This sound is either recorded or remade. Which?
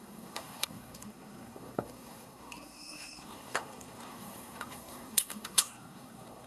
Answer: remade